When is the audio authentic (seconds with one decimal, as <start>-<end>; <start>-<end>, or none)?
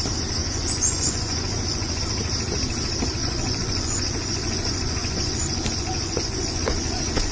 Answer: 0.0-0.4; 2.0-3.2